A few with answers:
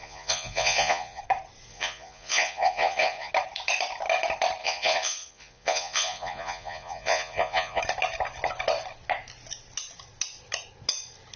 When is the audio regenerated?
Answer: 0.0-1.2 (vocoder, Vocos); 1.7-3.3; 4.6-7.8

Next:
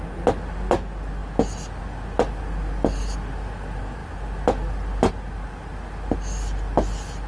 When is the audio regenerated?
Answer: none

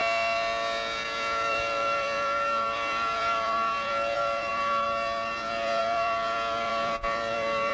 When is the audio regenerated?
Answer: 1.5-7.7 (vocoder, BigVGAN v2)

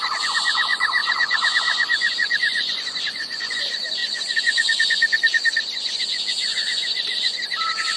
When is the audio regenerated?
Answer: 0.0-8.0 (vocoder, Vocos)